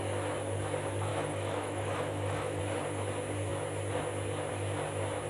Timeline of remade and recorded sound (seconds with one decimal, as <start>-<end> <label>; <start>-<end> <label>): 0.0-1.1 recorded; 1.1-2.6 remade; 2.6-5.3 recorded